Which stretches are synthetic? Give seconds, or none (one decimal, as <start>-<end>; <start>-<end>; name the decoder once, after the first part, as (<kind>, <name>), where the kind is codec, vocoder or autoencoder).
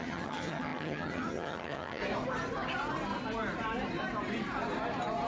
0.0-2.0 (vocoder, HiFi-GAN)